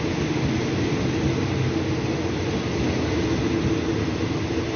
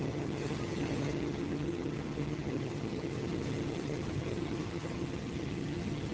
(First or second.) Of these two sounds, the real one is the first